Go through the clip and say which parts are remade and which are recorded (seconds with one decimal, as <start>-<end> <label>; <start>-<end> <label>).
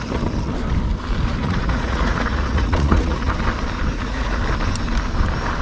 0.0-1.4 recorded; 1.4-3.3 remade; 3.3-3.9 recorded; 3.9-4.4 remade; 4.4-5.6 recorded